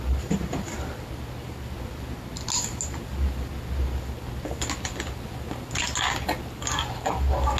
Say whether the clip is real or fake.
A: real